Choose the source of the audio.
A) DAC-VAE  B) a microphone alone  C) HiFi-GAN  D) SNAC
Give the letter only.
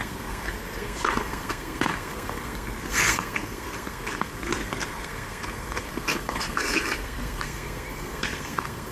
D